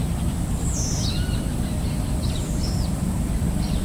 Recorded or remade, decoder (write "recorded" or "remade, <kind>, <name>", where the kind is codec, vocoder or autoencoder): recorded